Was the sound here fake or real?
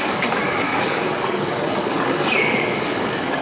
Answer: fake